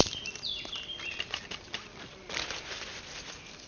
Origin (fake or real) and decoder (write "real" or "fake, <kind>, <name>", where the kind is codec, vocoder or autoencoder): real